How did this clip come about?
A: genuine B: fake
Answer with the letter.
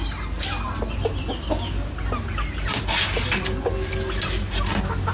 A